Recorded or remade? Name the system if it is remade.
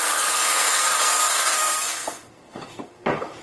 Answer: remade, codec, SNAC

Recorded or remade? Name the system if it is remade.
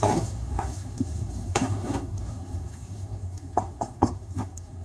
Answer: remade, codec, SNAC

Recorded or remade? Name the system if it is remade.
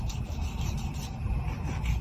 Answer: recorded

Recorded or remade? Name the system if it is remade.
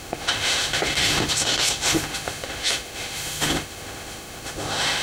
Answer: remade, autoencoder, DAC-VAE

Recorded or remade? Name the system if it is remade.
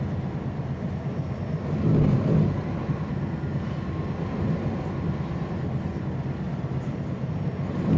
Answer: recorded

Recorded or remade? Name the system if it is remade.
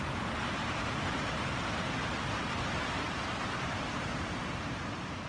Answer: remade, vocoder, BigVGAN v2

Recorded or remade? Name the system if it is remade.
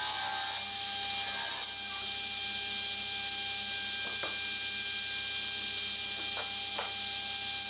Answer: recorded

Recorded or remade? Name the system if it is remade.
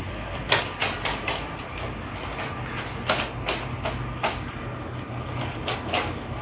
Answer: recorded